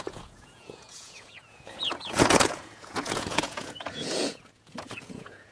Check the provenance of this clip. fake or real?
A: fake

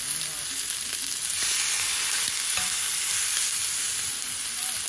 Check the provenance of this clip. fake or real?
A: real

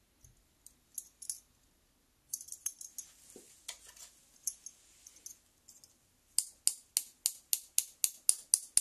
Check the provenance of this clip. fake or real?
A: real